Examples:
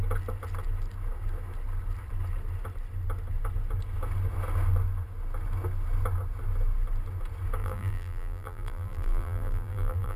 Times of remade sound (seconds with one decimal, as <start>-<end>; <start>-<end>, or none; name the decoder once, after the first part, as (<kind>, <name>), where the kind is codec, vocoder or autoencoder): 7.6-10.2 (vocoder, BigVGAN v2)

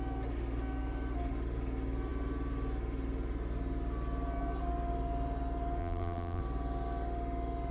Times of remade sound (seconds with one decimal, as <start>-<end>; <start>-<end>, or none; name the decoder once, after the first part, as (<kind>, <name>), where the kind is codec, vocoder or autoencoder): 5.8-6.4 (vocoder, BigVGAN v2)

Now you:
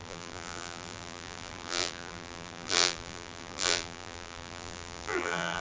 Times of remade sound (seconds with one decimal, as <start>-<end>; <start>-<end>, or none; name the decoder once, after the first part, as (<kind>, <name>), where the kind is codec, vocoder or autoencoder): 0.0-5.6 (vocoder, BigVGAN v2)

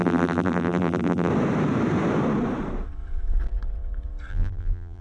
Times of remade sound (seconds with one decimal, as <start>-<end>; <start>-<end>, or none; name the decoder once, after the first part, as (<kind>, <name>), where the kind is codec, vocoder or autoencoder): 0.0-1.3 (vocoder, BigVGAN v2); 4.3-5.0